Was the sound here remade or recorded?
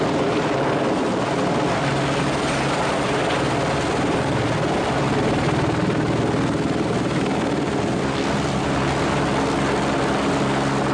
recorded